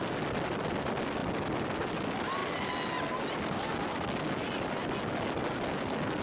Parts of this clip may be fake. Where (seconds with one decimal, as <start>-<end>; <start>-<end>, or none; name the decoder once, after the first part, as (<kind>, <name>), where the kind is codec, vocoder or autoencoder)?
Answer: none